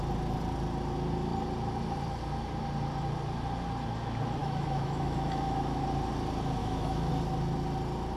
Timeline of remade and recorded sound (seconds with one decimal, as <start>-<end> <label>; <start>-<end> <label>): 0.0-4.4 recorded; 4.4-5.8 remade; 5.8-6.6 recorded; 6.6-7.1 remade; 7.1-8.2 recorded